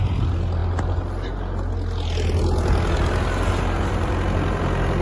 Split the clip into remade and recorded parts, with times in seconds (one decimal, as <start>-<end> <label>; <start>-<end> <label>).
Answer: 0.0-5.0 recorded